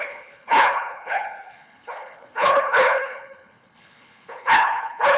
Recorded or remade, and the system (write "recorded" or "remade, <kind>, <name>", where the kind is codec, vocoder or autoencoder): remade, codec, HILCodec